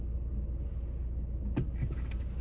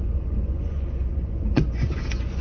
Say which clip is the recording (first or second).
first